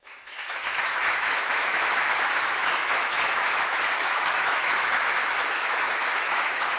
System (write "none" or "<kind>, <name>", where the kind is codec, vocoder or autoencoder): autoencoder, DAC-VAE